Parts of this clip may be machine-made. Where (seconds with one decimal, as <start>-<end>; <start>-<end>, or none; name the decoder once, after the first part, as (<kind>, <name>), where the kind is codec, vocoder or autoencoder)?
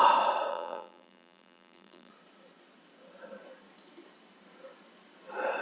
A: 0.5-2.1 (vocoder, BigVGAN v2)